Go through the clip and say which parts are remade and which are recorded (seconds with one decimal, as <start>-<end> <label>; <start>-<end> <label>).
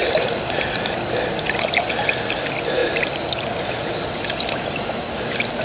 0.0-1.3 remade; 1.3-5.6 recorded